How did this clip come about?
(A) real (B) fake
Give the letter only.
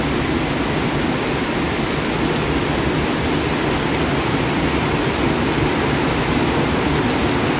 A